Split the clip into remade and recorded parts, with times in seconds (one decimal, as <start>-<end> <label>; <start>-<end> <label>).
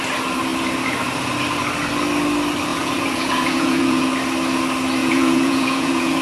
0.0-2.7 recorded; 2.7-4.1 remade; 4.1-5.0 recorded; 5.0-6.2 remade